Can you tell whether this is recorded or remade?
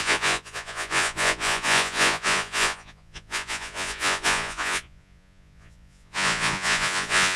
remade